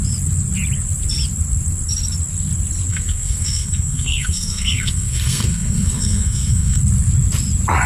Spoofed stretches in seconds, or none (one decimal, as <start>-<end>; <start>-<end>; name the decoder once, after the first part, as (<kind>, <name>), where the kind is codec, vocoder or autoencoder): 2.9-6.8 (codec, SNAC)